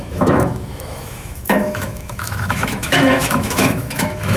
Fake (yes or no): yes